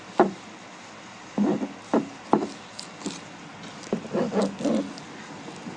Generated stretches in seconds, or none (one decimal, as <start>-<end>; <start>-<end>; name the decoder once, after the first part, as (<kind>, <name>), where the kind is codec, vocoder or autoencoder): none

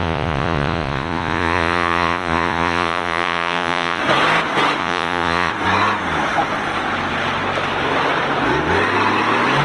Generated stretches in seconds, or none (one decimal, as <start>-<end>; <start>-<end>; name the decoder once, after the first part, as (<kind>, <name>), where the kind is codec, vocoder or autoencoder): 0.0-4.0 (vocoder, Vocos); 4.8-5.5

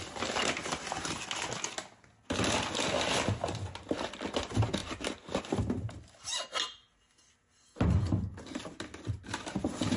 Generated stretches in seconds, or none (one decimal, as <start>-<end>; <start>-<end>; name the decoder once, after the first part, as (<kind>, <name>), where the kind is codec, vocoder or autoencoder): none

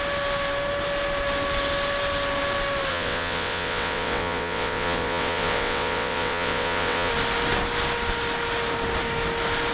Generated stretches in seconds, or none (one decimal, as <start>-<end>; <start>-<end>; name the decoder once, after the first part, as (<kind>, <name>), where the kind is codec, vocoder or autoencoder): 2.9-7.1 (vocoder, WaveNeXt)